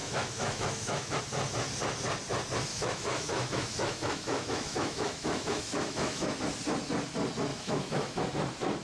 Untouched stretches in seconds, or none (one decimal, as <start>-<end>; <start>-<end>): 1.2-2.7; 6.4-7.5; 8.2-8.8